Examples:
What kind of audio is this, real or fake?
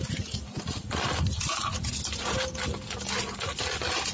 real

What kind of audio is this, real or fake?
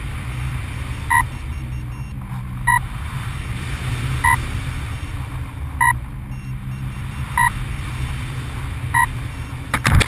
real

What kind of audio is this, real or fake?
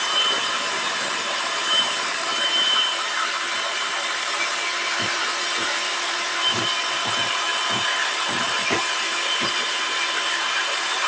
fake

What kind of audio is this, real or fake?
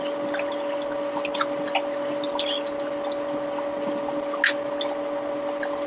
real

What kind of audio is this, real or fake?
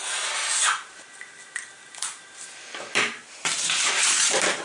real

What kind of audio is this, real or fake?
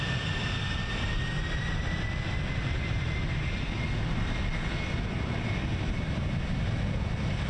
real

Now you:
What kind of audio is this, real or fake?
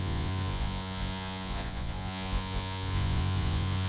fake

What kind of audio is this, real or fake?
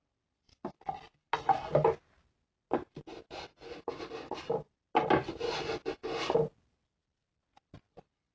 real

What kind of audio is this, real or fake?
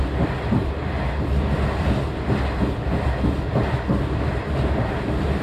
real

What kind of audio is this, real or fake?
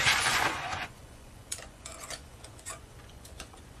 fake